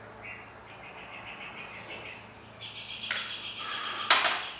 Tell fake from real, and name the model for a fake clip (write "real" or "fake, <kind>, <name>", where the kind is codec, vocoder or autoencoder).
real